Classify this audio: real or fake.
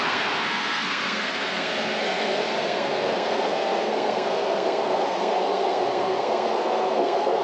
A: fake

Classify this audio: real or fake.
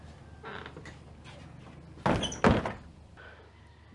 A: real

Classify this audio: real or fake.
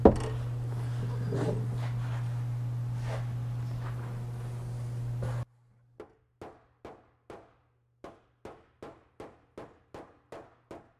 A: real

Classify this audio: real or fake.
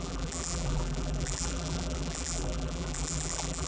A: fake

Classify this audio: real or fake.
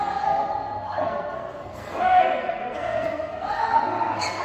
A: fake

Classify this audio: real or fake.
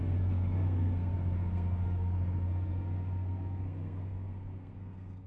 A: fake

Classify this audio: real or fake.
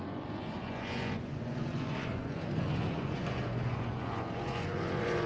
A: fake